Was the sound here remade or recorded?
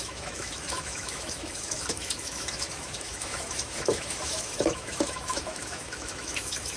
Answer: remade